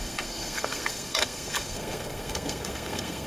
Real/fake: fake